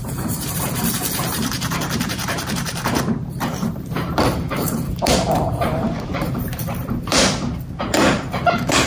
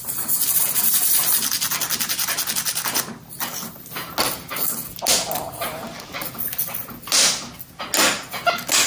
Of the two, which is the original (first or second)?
second